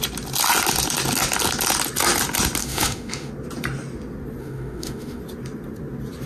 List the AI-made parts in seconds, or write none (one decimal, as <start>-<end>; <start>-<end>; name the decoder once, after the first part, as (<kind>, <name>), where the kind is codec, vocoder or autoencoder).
2.6-3.3 (autoencoder, DAC-VAE); 4.4-5.2